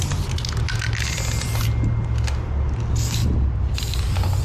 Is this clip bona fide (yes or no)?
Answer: yes